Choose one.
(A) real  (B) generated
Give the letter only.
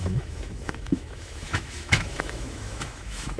B